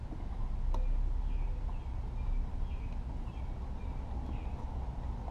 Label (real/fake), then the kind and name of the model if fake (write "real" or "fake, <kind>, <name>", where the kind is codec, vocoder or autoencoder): real